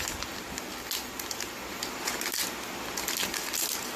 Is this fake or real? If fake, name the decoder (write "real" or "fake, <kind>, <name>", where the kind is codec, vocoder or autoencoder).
real